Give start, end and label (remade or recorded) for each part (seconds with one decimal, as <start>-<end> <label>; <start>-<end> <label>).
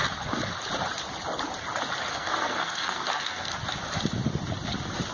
0.0-2.1 recorded; 2.1-3.5 remade; 3.5-5.1 recorded